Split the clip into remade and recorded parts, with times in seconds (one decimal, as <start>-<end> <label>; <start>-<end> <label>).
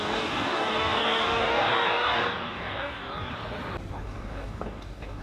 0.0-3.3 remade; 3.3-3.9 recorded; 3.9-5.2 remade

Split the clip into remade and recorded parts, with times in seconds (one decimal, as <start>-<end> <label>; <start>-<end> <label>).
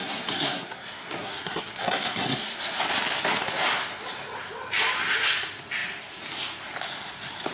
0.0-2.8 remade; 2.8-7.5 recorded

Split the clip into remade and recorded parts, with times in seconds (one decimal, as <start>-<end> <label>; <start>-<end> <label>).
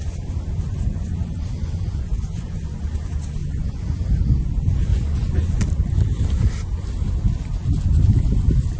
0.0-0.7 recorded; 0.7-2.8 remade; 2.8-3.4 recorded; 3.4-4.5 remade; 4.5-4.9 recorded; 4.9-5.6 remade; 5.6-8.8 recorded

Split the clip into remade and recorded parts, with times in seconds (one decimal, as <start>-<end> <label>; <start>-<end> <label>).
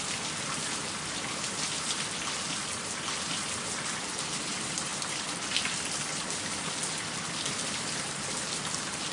0.0-9.1 recorded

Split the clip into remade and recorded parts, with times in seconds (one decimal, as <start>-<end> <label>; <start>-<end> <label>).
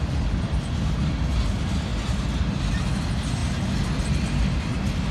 0.0-5.1 recorded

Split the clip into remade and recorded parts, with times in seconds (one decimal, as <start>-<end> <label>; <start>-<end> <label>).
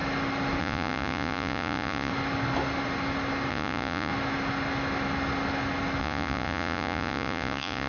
0.0-0.6 recorded; 0.6-2.1 remade; 2.1-3.5 recorded; 3.5-4.1 remade; 4.1-6.0 recorded; 6.0-7.9 remade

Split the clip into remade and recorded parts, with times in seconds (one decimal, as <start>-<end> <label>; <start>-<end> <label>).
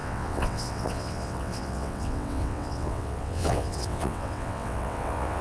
0.0-5.4 remade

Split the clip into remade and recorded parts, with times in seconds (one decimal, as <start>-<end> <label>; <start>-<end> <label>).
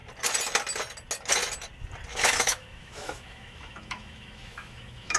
0.0-2.1 recorded; 2.1-5.2 remade